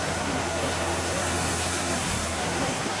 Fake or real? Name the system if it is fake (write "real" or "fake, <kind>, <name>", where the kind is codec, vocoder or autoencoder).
fake, codec, SNAC